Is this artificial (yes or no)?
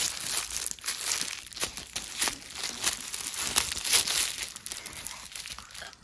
no